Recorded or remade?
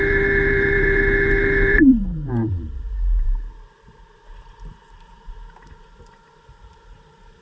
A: remade